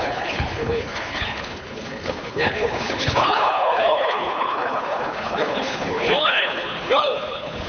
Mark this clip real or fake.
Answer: fake